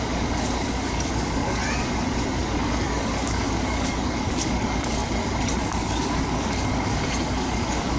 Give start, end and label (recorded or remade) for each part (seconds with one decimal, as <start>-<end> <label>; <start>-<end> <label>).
0.0-1.6 remade; 1.6-2.6 recorded; 2.6-5.0 remade; 5.0-5.6 recorded; 5.6-8.0 remade